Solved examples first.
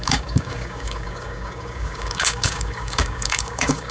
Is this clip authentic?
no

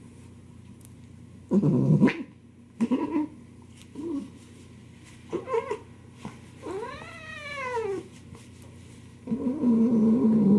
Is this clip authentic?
yes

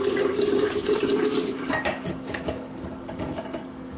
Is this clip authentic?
no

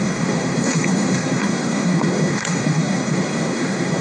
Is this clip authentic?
no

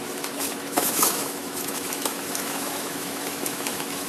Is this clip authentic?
no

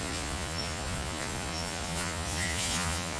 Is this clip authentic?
no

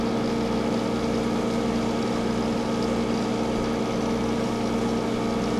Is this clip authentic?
yes